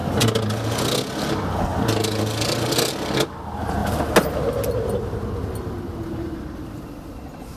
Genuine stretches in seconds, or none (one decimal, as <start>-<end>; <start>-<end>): 0.0-7.6